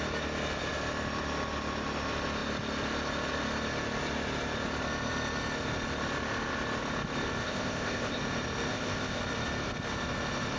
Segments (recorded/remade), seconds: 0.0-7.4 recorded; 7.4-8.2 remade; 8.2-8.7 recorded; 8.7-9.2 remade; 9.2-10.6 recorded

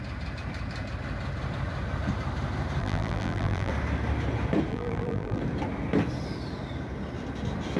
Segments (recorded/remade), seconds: 0.0-2.8 recorded; 2.8-3.7 remade; 3.7-4.7 recorded; 4.7-5.4 remade; 5.4-7.8 recorded

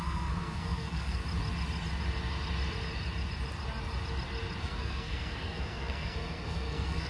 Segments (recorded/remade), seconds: 0.0-1.2 remade; 1.2-4.6 recorded; 4.6-7.1 remade